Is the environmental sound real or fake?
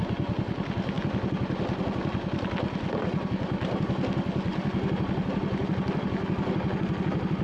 real